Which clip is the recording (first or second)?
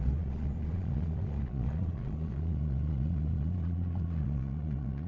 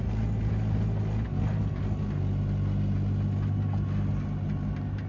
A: second